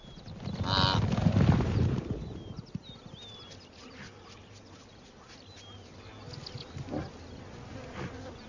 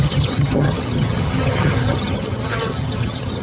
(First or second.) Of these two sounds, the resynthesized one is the second